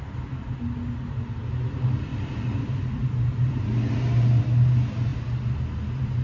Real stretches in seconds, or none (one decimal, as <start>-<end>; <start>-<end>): 0.0-2.1; 4.4-6.2